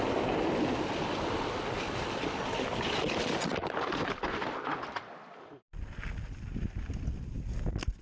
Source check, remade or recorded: recorded